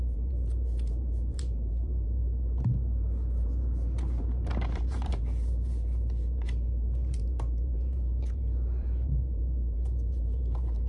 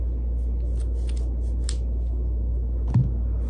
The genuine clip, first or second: second